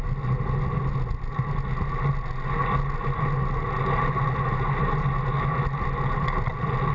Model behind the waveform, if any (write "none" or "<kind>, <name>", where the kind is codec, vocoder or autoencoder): none